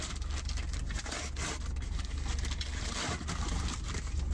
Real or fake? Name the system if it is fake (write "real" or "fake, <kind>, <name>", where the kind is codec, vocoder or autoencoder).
real